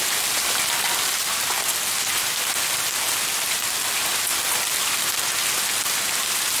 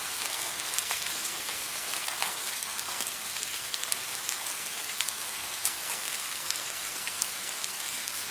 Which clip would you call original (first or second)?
first